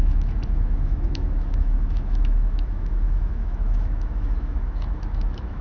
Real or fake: fake